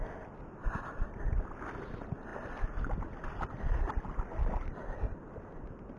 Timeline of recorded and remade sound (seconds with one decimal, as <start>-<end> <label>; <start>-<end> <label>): 0.0-6.0 recorded